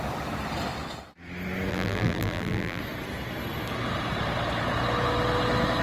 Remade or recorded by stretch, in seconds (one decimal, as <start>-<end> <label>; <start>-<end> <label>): 0.0-1.7 recorded; 1.7-2.8 remade; 2.8-5.8 recorded